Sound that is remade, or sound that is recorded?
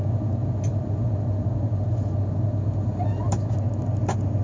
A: recorded